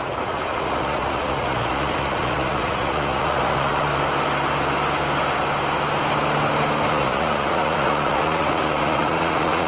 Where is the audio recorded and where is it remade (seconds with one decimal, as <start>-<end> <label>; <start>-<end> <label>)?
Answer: 0.0-3.9 remade; 3.9-6.9 recorded; 6.9-9.7 remade